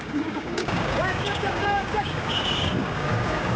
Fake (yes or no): yes